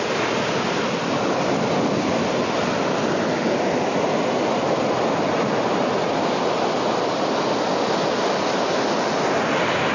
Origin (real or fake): real